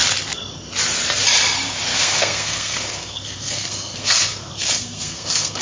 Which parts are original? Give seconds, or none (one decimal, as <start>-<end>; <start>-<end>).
0.0-1.9